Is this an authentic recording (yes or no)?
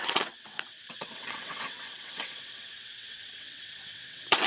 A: no